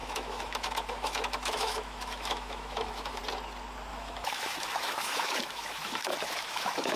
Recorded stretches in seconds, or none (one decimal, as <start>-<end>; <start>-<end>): 3.2-3.9